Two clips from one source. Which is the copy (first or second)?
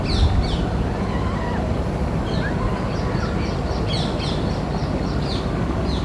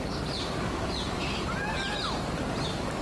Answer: second